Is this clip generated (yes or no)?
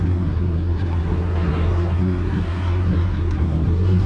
yes